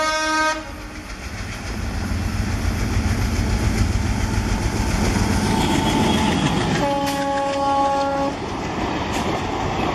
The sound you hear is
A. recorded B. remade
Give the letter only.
A